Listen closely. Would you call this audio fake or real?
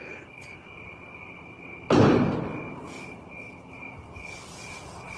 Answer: real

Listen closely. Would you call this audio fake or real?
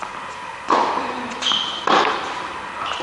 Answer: real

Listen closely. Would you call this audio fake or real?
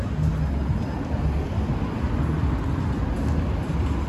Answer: real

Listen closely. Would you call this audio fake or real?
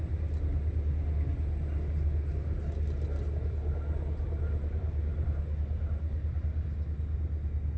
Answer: real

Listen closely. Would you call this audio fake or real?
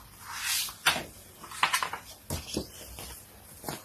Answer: real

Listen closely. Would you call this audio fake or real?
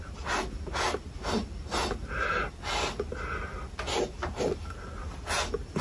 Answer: real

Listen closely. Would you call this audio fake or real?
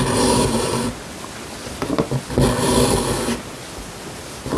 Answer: real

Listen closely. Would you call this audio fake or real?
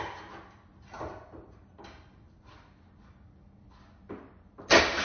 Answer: real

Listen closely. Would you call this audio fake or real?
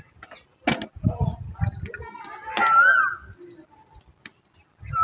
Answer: real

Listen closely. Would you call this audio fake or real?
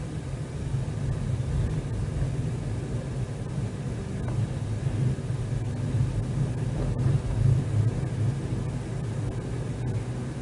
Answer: real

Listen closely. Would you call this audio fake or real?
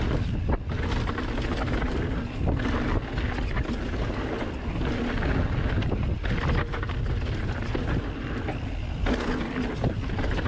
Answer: real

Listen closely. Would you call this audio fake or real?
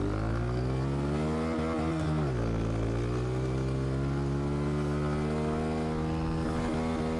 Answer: real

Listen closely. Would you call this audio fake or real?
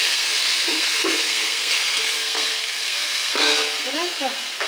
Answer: fake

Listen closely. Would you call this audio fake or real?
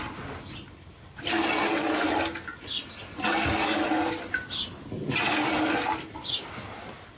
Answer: real